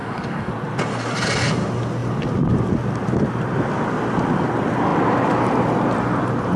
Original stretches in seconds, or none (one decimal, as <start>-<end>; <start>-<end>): 0.5-6.6